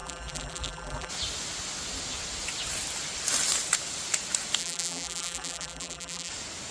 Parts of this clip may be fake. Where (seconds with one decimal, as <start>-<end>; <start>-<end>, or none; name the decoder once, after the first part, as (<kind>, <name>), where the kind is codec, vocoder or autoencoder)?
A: 0.0-1.1 (vocoder, BigVGAN v2); 4.6-6.3